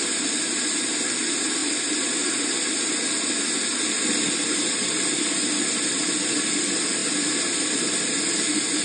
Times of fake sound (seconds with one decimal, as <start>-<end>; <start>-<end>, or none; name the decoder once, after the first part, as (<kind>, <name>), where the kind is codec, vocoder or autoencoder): none